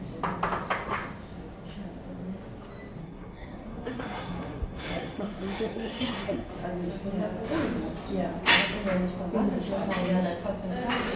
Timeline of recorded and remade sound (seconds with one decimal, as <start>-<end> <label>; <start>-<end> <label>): 0.0-3.0 recorded; 3.0-6.5 remade; 6.5-11.2 recorded